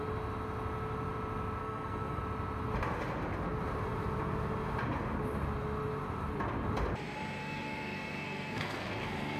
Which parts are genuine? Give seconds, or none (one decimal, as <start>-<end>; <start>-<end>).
0.0-1.6; 2.2-7.4